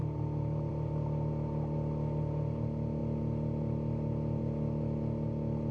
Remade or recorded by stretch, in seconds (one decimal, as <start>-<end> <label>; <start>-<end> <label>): 0.0-5.7 recorded